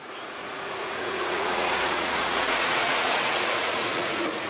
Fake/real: fake